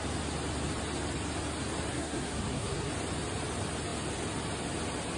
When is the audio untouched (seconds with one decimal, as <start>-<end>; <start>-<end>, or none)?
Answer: 0.0-1.9; 2.9-5.2